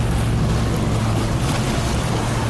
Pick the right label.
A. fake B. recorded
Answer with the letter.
B